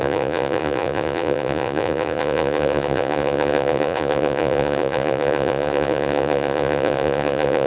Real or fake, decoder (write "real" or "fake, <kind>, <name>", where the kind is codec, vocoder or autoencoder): fake, vocoder, Vocos